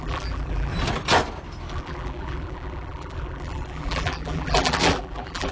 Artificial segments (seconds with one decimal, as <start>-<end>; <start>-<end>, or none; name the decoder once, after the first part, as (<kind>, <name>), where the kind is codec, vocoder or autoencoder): 0.0-0.7 (vocoder, BigVGAN v2); 1.7-5.5